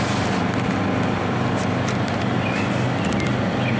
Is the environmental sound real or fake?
real